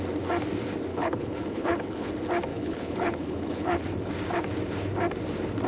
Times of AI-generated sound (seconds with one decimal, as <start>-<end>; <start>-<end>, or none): 0.9-2.1; 2.5-3.8